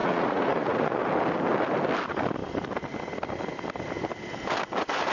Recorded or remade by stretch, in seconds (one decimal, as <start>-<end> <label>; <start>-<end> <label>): 0.0-1.0 remade; 1.0-5.1 recorded